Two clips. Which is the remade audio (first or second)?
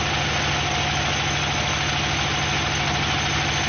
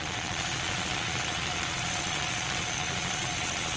second